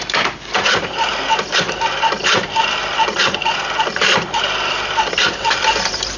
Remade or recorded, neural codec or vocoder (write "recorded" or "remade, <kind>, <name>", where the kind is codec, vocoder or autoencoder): remade, vocoder, BigVGAN v2